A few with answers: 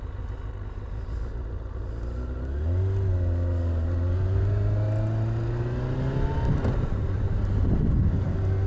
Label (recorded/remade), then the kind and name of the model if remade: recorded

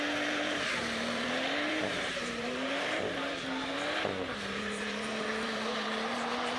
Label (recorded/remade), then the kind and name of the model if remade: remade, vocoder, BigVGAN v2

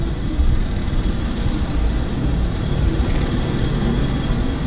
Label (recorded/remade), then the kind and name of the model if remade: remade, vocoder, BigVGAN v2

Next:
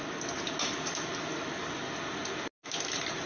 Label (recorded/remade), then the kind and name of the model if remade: recorded